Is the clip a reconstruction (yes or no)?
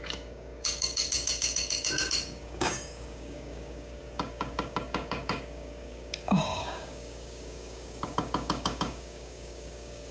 yes